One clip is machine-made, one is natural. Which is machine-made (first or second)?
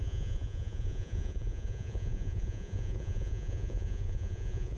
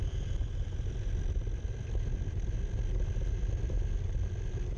first